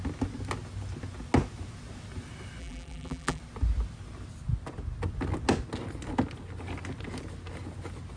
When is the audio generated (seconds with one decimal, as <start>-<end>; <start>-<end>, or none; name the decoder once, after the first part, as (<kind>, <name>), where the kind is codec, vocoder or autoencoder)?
2.6-3.4 (vocoder, BigVGAN v2)